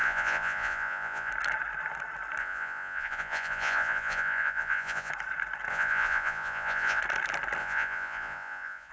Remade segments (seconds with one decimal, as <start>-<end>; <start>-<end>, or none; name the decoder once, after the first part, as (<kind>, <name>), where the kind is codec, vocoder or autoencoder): 0.0-1.3 (vocoder, Vocos); 2.4-5.1; 5.7-7.0; 7.6-8.9